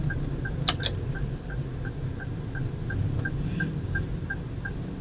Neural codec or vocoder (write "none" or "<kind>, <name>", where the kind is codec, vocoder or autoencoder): none